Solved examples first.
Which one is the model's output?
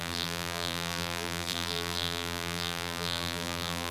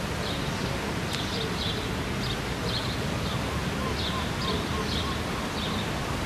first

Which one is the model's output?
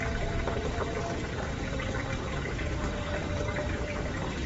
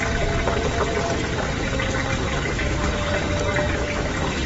first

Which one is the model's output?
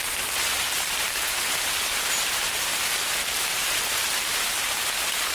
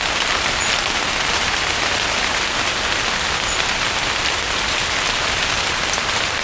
first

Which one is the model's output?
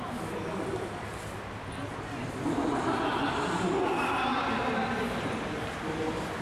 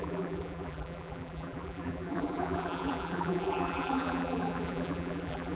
second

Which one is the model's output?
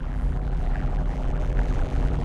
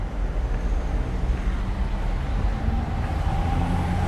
first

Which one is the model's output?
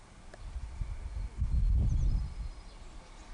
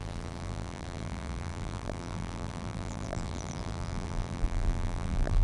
second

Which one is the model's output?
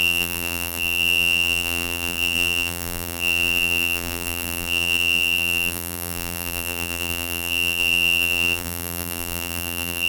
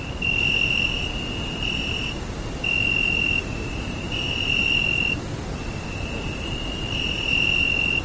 first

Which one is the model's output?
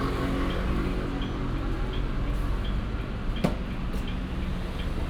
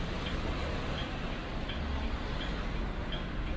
second